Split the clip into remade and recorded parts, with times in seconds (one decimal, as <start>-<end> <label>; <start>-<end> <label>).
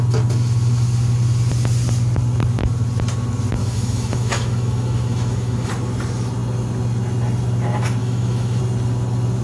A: 0.0-3.6 recorded; 3.6-5.7 remade; 5.7-8.0 recorded; 8.0-8.6 remade; 8.6-9.4 recorded